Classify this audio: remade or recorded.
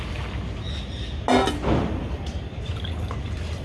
recorded